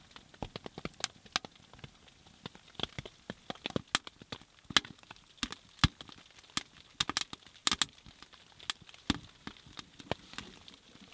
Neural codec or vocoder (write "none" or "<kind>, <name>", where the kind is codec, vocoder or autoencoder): none